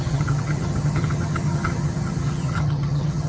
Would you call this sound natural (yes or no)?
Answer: no